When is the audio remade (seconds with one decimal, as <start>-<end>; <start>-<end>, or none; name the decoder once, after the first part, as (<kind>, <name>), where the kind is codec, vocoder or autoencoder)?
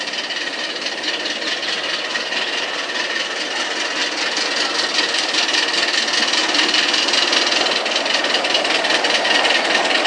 2.1-3.5 (vocoder, BigVGAN v2); 4.0-4.7; 6.4-8.1